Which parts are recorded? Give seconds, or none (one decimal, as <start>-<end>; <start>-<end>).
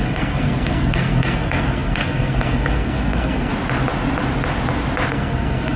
3.5-5.1